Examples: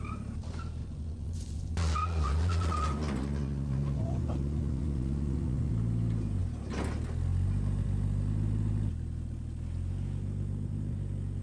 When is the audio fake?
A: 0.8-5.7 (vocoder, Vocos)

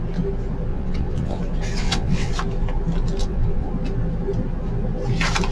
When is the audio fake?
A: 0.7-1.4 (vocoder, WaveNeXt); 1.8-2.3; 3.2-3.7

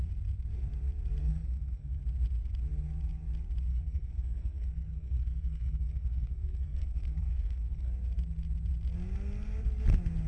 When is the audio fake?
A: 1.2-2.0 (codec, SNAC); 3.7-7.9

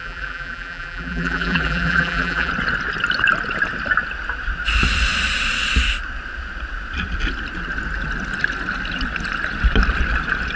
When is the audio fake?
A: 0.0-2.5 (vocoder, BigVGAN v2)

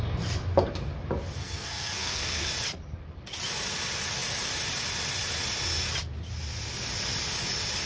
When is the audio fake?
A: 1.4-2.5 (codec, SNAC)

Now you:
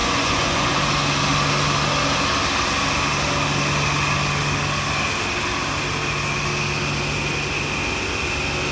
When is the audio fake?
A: 0.0-0.8 (vocoder, Vocos)

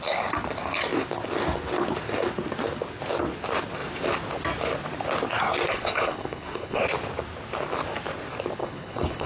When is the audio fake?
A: 5.7-6.8 (codec, HILCodec); 8.6-9.3